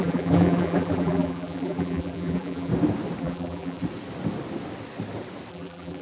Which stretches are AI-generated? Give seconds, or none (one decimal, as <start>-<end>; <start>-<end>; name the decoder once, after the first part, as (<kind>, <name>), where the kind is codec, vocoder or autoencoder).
0.0-2.7 (vocoder, BigVGAN v2); 3.2-3.8; 5.5-6.0